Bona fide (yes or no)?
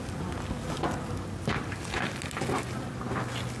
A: yes